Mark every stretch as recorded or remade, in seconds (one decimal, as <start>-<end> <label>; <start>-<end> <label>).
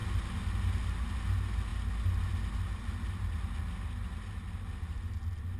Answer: 0.0-5.6 recorded